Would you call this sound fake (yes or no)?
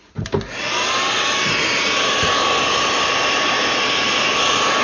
no